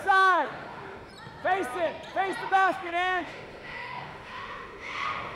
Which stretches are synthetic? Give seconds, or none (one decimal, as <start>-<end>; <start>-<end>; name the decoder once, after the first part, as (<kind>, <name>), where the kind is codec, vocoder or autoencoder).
0.0-1.1 (autoencoder, DAC-VAE); 2.5-5.4